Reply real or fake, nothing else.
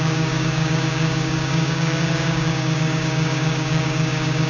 fake